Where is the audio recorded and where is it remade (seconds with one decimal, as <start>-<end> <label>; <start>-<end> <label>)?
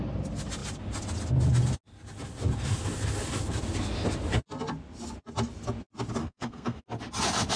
0.0-6.2 recorded; 6.2-6.8 remade; 6.8-7.6 recorded